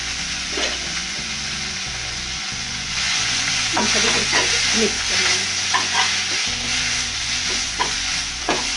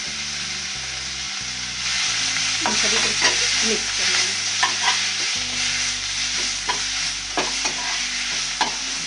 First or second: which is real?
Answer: second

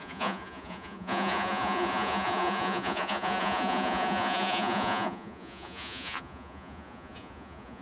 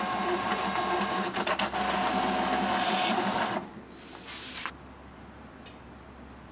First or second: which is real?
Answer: second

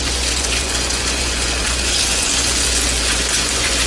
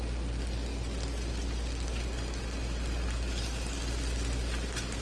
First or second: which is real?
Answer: second